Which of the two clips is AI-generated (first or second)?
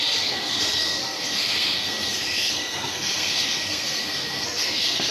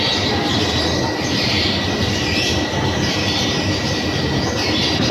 first